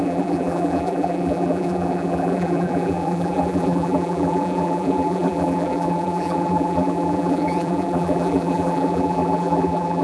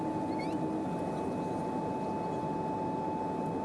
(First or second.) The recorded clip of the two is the second